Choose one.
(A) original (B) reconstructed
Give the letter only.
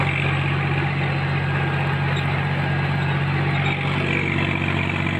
A